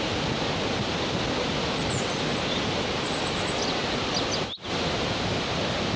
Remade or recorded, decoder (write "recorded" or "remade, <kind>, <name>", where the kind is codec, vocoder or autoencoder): recorded